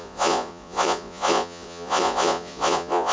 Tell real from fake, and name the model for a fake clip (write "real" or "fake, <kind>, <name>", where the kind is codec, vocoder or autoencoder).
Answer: fake, vocoder, Vocos